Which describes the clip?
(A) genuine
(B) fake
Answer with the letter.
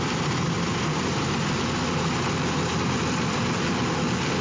A